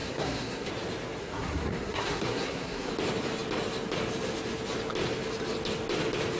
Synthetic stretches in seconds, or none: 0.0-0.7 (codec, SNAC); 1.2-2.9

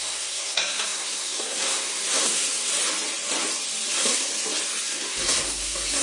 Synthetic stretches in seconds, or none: 0.0-2.7 (codec, SNAC); 3.9-4.3; 4.8-6.0